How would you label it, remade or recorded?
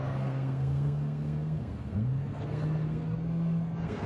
remade